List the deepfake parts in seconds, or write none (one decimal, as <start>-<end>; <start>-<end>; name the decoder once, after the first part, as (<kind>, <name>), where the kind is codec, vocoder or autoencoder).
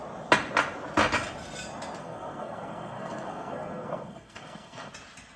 2.0-4.9 (codec, SNAC)